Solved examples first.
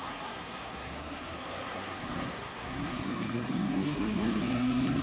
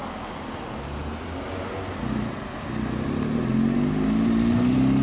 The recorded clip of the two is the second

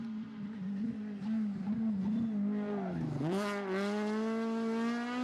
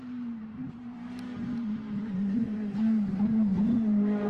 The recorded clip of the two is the first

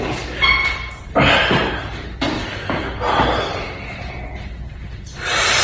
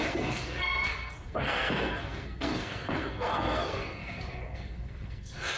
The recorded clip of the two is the first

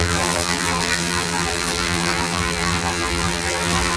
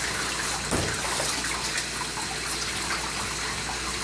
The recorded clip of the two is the second